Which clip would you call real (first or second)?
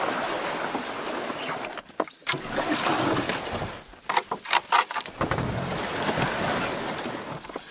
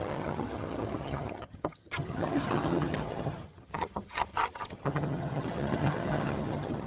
first